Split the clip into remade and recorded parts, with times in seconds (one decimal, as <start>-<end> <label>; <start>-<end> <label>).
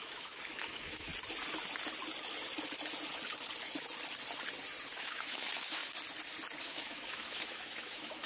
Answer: 0.0-1.1 remade; 1.1-5.0 recorded; 5.0-5.8 remade; 5.8-6.6 recorded; 6.6-8.3 remade